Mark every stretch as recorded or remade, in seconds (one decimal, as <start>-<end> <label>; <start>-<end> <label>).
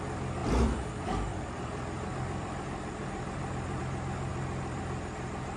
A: 0.0-0.4 recorded; 0.4-3.8 remade; 3.8-4.3 recorded; 4.3-4.8 remade; 4.8-5.6 recorded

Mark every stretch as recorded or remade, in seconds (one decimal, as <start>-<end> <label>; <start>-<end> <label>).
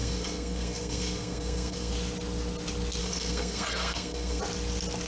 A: 0.0-1.9 remade; 1.9-3.0 recorded; 3.0-4.4 remade; 4.4-5.1 recorded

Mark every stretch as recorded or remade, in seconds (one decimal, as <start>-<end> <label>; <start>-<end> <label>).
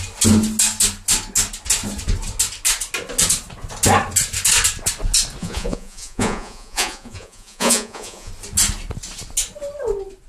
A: 0.0-5.4 recorded; 5.4-8.3 remade; 8.3-10.3 recorded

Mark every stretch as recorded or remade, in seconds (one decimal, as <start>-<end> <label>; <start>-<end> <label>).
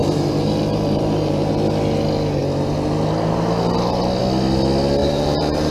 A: 0.0-1.5 remade; 1.5-5.0 recorded; 5.0-5.7 remade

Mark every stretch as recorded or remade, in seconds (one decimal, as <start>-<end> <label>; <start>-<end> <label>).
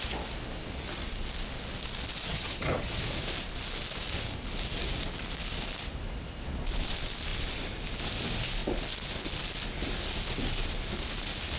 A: 0.0-2.3 recorded; 2.3-3.0 remade; 3.0-11.6 recorded